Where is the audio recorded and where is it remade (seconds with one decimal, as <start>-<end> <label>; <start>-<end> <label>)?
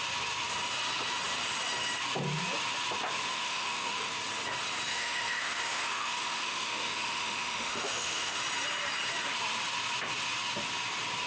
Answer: 0.0-3.3 recorded; 3.3-4.1 remade; 4.1-4.9 recorded; 4.9-8.4 remade; 8.4-11.3 recorded